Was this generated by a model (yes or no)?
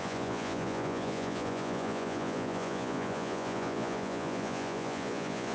yes